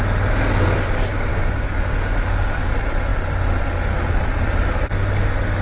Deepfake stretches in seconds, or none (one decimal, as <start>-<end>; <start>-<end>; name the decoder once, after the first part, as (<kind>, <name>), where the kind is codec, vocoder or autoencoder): 1.3-2.7 (codec, DAC)